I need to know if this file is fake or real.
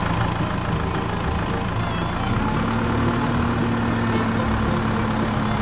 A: real